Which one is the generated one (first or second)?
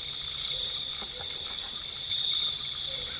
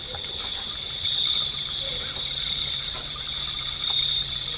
second